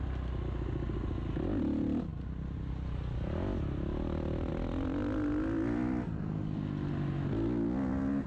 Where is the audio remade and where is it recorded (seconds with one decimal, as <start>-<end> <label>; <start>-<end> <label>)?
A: 0.0-8.3 recorded